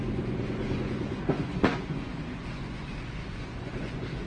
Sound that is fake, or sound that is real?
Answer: fake